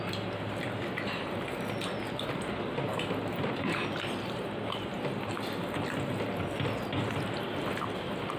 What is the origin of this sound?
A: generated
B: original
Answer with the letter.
B